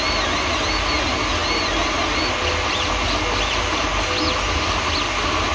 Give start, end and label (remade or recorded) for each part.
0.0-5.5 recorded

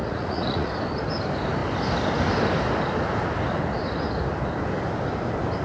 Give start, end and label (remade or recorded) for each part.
0.0-0.7 remade; 0.7-5.6 recorded

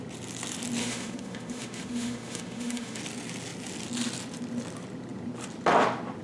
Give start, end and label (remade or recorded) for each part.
0.0-0.8 recorded; 0.8-3.0 remade; 3.0-6.2 recorded

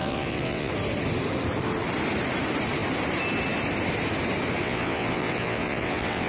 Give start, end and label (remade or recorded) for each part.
0.0-0.7 remade; 0.7-4.6 recorded; 4.6-6.3 remade

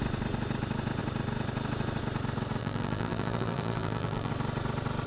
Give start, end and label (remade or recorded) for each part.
0.0-2.6 recorded; 2.6-4.3 remade; 4.3-5.1 recorded

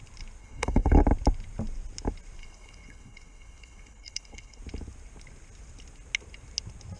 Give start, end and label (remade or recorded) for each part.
0.0-0.4 recorded; 0.4-1.0 remade; 1.0-2.4 recorded; 2.4-4.6 remade; 4.6-7.0 recorded

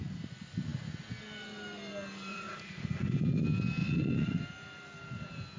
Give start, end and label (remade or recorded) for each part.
0.0-2.3 recorded; 2.3-3.4 remade; 3.4-3.8 recorded; 3.8-4.4 remade; 4.4-5.6 recorded

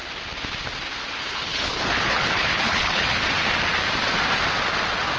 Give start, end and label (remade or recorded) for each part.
0.0-1.2 recorded; 1.2-3.2 remade; 3.2-5.2 recorded